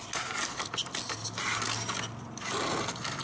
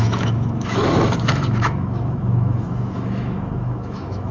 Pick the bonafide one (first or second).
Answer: first